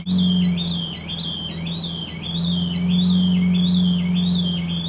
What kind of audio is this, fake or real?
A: real